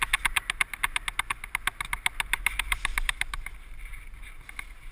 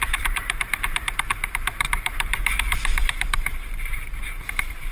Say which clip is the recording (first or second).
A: first